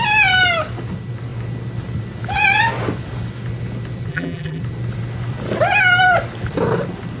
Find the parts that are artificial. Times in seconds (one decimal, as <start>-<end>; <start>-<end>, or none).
4.1-4.6